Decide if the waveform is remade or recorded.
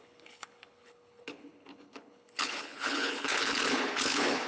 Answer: remade